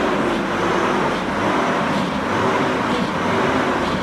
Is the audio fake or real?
real